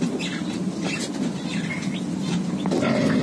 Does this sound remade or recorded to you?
recorded